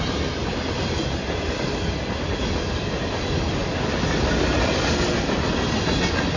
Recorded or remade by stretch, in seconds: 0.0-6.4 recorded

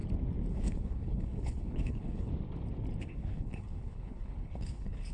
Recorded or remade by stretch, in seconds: 0.0-0.5 recorded; 0.5-2.3 remade; 2.3-3.0 recorded; 3.0-5.1 remade

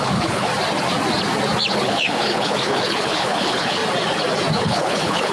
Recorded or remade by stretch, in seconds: 0.0-0.5 remade; 0.5-1.7 recorded; 1.7-3.8 remade; 3.8-4.6 recorded; 4.6-5.3 remade